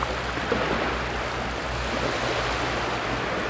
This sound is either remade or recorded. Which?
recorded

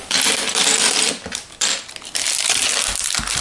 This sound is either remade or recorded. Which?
recorded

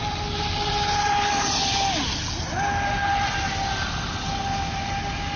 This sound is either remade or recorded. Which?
recorded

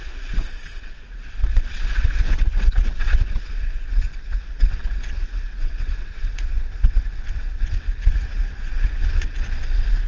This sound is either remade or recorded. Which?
remade